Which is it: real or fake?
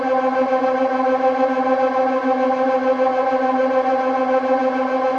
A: fake